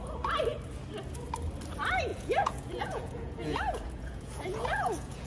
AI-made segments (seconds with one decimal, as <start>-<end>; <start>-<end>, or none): 2.1-5.3